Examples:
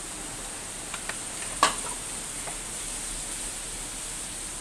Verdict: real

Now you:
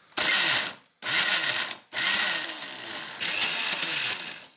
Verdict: real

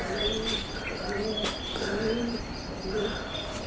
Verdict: real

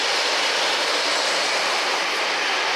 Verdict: real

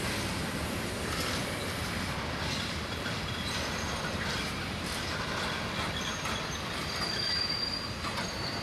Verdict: fake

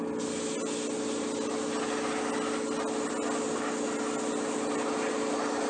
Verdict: real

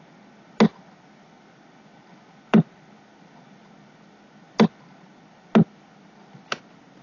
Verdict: real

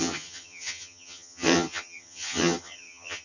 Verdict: fake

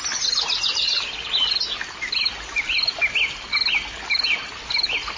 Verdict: real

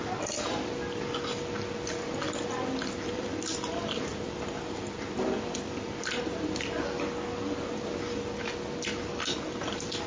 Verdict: real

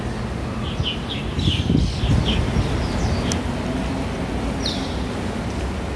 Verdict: real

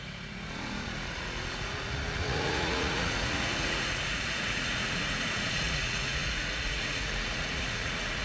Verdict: fake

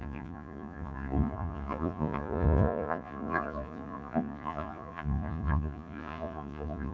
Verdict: fake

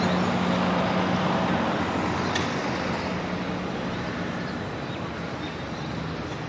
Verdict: real